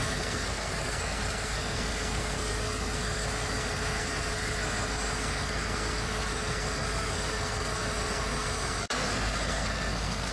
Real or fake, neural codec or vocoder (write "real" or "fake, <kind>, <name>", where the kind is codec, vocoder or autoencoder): fake, codec, SNAC